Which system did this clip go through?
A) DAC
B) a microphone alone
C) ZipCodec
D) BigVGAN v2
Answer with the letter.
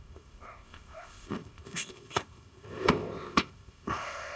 C